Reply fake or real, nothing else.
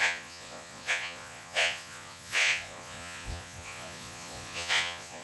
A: fake